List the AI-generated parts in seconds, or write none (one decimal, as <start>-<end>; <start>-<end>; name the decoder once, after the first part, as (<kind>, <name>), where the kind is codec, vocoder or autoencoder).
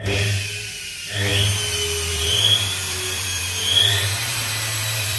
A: 0.0-1.3 (vocoder, BigVGAN v2); 2.1-5.2